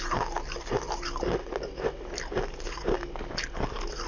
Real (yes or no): yes